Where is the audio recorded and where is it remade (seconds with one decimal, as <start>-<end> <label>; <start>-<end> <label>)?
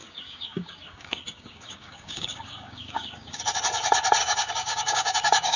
0.0-3.4 remade; 3.4-4.2 recorded; 4.2-5.6 remade